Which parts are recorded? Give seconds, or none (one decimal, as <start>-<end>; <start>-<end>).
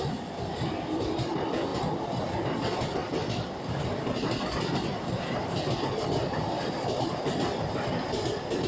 0.0-3.0; 7.0-8.7